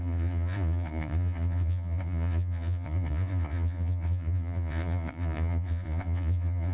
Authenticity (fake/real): fake